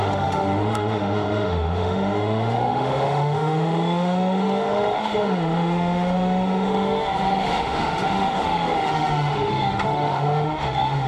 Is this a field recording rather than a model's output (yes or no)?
no